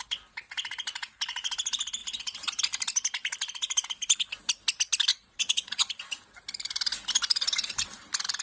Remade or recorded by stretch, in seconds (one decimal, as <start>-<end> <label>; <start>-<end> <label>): 0.0-5.1 recorded; 5.1-6.0 remade; 6.0-8.4 recorded